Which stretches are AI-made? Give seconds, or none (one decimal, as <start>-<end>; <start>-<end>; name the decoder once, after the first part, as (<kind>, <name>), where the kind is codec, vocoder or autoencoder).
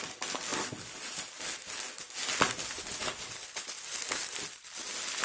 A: none